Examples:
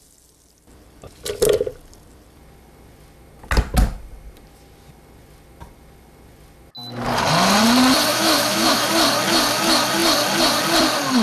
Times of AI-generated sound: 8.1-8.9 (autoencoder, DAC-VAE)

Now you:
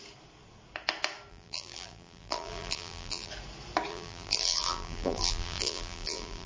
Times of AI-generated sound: 1.3-3.3 (vocoder, BigVGAN v2); 3.9-6.5

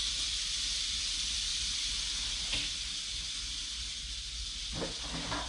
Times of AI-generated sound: none

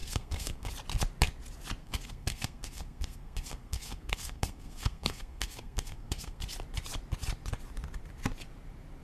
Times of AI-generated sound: 0.0-0.7 (codec, SNAC); 1.8-6.4

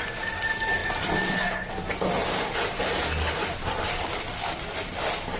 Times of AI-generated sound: 3.4-4.1 (vocoder, BigVGAN v2)

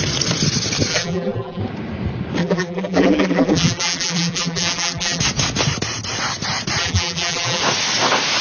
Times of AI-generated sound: 0.9-1.6 (vocoder, BigVGAN v2); 2.4-5.2; 6.8-7.6